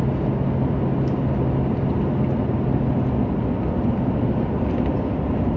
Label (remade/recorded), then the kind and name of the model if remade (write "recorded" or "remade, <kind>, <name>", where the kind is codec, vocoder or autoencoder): recorded